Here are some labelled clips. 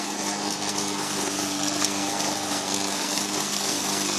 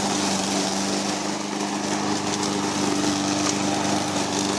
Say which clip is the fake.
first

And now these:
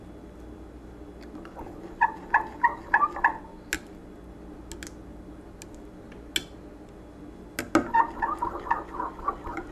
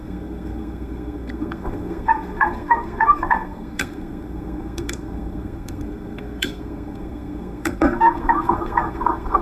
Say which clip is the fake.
second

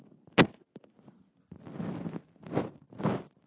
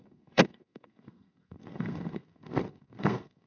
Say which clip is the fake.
second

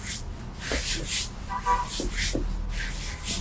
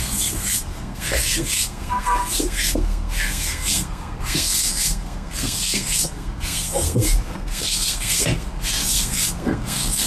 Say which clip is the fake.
second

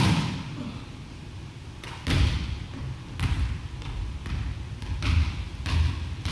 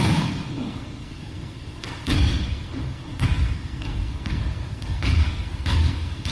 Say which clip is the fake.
second